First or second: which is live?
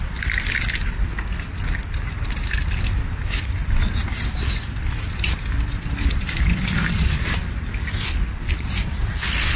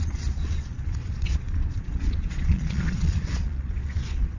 first